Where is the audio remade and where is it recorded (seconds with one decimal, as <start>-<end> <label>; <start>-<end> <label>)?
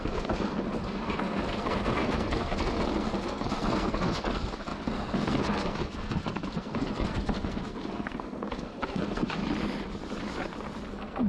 0.0-9.4 remade; 9.4-10.9 recorded; 10.9-11.3 remade